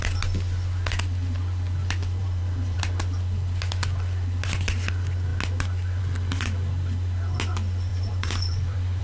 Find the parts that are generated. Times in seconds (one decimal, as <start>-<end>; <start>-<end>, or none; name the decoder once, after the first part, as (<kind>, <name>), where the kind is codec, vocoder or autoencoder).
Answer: 2.2-2.8 (vocoder, BigVGAN v2); 7.9-9.0